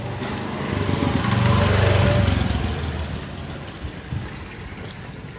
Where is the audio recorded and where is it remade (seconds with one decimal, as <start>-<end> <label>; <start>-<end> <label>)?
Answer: 0.0-5.4 recorded

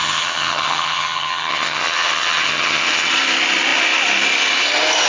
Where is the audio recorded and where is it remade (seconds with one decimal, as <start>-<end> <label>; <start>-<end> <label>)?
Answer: 0.0-3.1 remade; 3.1-5.1 recorded